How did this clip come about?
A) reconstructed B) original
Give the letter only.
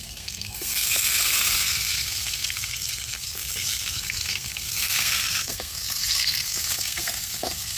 A